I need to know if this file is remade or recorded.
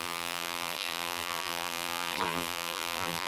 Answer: remade